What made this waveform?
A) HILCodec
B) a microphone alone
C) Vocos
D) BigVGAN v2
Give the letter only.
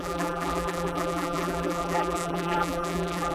D